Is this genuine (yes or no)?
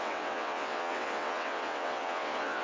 no